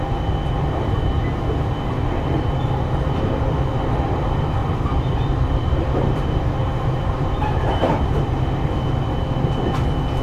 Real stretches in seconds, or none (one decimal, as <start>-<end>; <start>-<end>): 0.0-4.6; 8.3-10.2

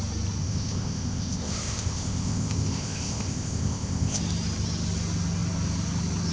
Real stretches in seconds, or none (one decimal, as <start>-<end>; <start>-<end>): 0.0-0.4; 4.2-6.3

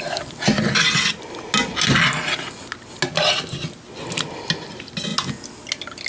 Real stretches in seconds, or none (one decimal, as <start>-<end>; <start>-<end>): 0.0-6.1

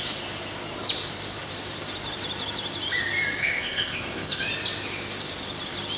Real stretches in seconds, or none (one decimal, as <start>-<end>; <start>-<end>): 0.0-3.4; 4.4-6.0

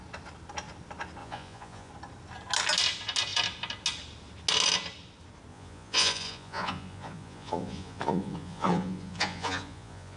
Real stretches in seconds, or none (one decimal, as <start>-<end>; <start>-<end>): 0.0-1.2; 1.9-5.5

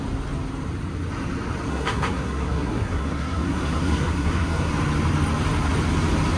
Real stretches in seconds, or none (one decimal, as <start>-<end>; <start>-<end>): 0.0-1.7; 4.7-6.4

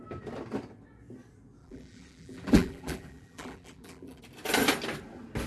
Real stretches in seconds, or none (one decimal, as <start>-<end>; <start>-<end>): 0.0-1.6; 4.2-5.5